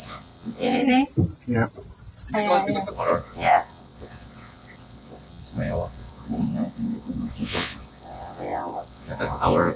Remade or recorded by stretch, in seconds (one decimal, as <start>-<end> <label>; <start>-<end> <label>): 0.0-0.8 remade; 0.8-2.9 recorded; 2.9-9.8 remade